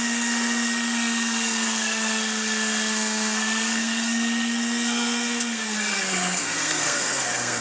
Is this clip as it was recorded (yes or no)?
no